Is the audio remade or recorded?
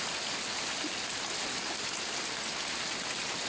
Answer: recorded